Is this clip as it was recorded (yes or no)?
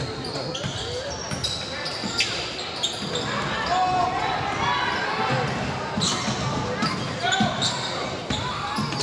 yes